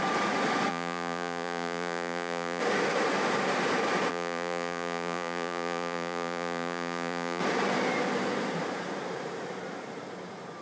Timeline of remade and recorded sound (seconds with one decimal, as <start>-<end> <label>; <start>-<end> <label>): 0.0-0.7 recorded; 0.7-2.6 remade; 2.6-4.1 recorded; 4.1-7.4 remade; 7.4-10.6 recorded